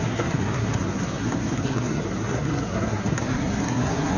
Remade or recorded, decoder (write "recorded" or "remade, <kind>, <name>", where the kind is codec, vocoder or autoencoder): remade, codec, SNAC